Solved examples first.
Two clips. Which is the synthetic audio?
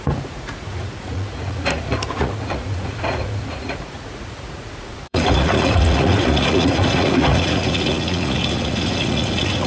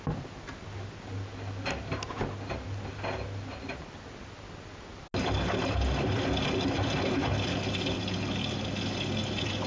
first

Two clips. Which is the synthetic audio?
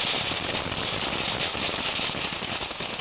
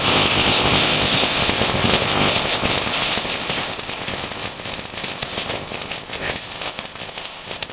second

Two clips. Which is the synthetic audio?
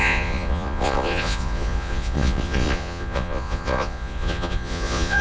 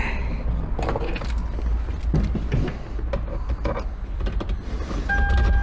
first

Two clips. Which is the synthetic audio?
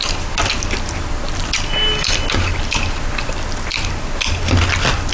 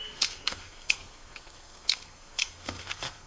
second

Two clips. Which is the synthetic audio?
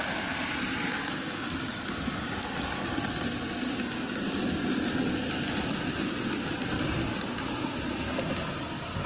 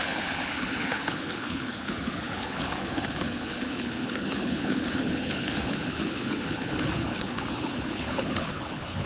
second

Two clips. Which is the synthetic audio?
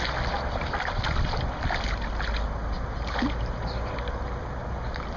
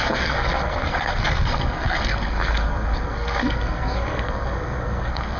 second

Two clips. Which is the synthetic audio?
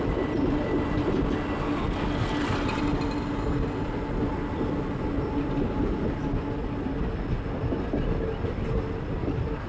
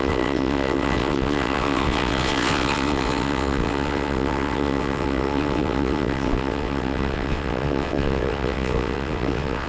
second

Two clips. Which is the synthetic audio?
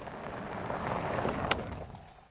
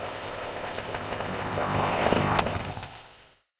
second